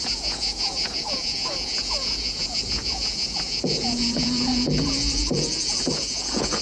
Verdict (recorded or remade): remade